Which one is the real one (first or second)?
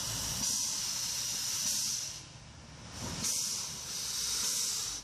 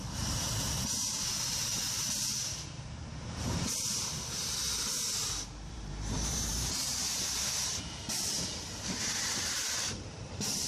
first